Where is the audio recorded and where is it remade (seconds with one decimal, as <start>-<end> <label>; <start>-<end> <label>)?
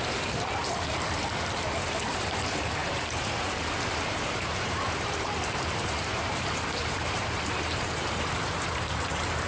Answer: 0.0-9.5 remade